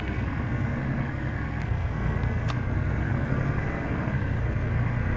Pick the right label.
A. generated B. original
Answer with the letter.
A